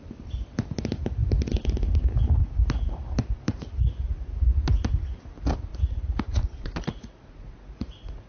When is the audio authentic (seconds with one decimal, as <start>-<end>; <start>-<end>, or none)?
0.0-5.7